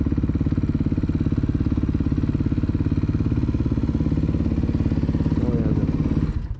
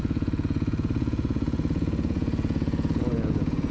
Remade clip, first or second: second